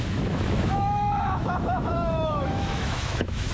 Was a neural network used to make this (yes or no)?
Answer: yes